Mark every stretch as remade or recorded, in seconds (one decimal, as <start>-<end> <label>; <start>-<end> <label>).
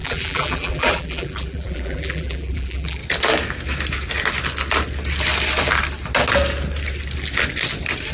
0.0-3.0 remade; 3.0-8.1 recorded